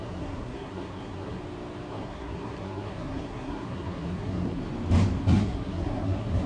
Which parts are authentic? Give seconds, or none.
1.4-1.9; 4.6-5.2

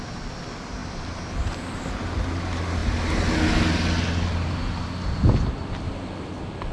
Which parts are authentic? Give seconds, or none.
0.0-6.7

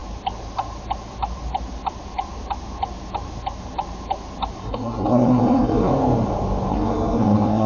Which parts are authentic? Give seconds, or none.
0.0-4.6; 5.9-6.7

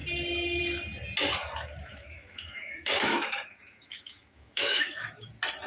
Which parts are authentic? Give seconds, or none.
0.0-1.9; 5.3-5.7

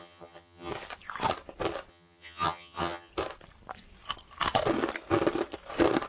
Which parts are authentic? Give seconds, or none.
0.7-1.9; 3.1-6.1

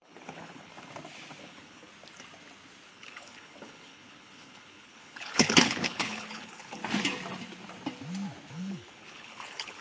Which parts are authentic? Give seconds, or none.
0.7-1.4; 1.9-2.9; 6.8-8.5

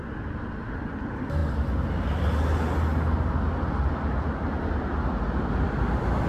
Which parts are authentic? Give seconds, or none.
0.0-6.3

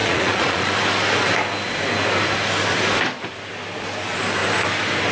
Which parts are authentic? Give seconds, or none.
0.8-5.1